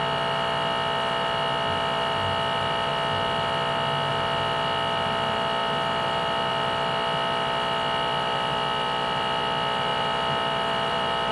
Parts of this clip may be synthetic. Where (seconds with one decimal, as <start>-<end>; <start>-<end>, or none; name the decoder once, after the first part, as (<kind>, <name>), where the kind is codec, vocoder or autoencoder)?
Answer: 5.6-6.5 (vocoder, BigVGAN v2); 9.9-11.3

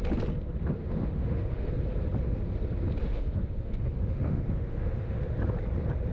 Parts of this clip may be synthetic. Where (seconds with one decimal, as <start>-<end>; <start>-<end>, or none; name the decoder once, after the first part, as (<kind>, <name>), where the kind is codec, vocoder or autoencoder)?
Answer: 0.8-1.7 (autoencoder, DAC-VAE); 3.0-5.2

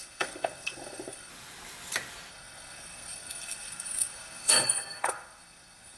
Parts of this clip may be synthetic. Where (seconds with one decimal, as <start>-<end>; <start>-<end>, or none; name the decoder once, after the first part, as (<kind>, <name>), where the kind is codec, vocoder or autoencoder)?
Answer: 0.0-1.3 (codec, SNAC); 2.3-6.0

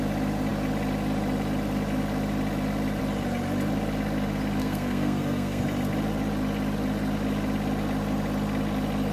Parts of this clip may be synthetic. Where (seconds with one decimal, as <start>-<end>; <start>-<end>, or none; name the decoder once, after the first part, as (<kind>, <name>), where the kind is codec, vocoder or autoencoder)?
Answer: 4.6-5.6 (codec, SNAC)